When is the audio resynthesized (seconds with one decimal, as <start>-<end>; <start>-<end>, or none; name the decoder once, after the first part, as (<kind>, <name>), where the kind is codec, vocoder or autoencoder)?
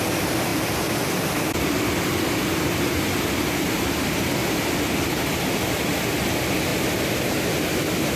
0.5-1.4 (vocoder, BigVGAN v2)